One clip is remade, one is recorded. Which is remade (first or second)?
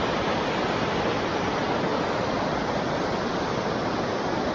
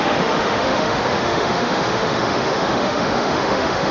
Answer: second